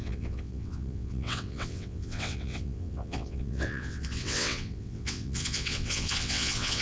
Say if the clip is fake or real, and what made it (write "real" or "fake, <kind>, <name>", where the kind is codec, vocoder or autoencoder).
fake, vocoder, WaveNeXt